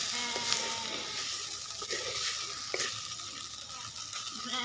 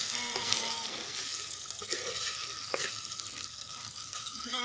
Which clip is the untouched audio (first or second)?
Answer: first